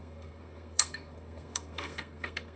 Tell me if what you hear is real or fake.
fake